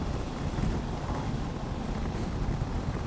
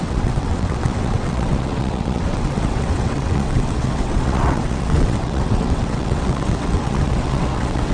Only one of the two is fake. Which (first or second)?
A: second